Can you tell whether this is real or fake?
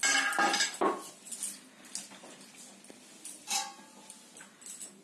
real